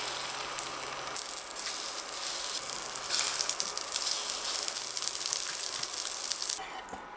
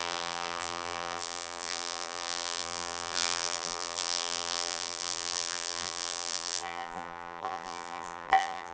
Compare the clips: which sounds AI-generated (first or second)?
second